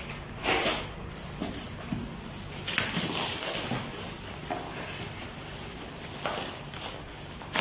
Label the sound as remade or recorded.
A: remade